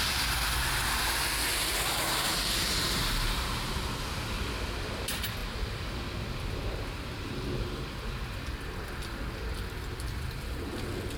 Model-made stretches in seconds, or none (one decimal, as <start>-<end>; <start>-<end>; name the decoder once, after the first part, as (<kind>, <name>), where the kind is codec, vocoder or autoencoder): 1.5-3.7 (vocoder, BigVGAN v2); 5.4-6.0